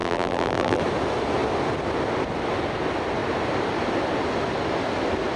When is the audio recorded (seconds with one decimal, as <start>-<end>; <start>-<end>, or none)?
0.8-5.4